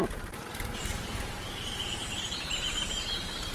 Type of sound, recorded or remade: remade